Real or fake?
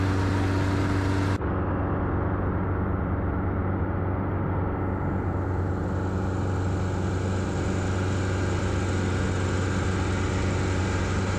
real